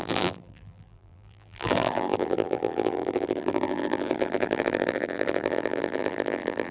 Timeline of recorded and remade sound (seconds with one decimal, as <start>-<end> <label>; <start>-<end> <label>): 0.0-6.7 remade